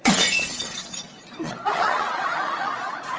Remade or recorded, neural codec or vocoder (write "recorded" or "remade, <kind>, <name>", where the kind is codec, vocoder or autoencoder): remade, vocoder, Vocos